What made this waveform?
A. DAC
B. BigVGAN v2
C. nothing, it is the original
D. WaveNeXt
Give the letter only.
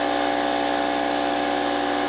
C